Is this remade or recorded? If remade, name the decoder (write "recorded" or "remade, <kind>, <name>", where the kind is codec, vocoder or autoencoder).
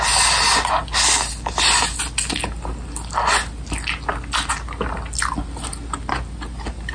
recorded